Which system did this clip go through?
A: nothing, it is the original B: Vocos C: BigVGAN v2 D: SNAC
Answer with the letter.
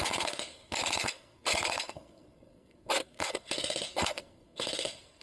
D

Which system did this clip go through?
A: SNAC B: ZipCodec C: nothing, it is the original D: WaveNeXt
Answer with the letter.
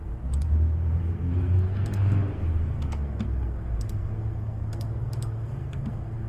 A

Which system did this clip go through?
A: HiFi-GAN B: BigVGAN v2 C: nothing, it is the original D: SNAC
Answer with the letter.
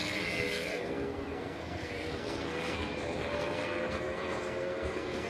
D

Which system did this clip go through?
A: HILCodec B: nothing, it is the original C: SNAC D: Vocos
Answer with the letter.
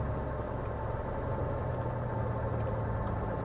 B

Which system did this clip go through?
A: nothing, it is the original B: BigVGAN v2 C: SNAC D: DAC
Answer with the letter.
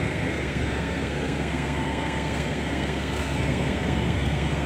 C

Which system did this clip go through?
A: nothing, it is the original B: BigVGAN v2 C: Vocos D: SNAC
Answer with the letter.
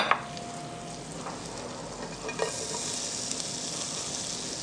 A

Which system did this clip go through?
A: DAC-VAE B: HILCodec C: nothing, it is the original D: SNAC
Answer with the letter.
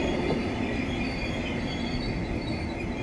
C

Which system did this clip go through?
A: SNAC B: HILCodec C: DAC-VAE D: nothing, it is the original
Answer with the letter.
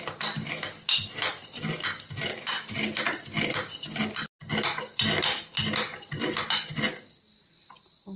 D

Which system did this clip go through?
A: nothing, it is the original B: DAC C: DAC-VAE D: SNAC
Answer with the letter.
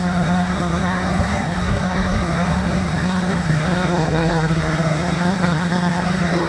D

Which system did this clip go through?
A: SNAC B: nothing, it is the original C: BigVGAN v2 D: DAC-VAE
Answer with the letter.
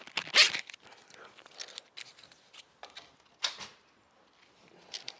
B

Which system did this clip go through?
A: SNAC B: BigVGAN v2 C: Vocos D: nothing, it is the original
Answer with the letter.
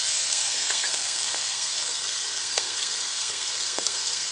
A